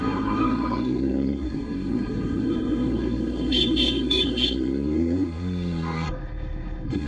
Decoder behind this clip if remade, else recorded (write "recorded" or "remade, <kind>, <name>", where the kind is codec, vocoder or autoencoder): remade, codec, SNAC